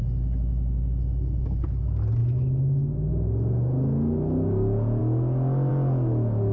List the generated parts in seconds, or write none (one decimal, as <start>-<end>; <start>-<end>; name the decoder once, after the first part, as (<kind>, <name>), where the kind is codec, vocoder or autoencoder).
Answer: 2.2-3.1 (autoencoder, DAC-VAE); 5.0-5.7